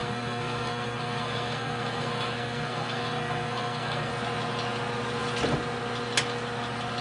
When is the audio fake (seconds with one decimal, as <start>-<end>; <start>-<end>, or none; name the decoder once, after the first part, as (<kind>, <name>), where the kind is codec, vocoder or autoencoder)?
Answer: 0.0-4.1 (codec, SNAC)